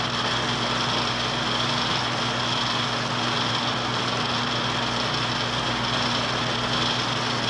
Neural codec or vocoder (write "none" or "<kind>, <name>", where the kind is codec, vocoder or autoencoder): none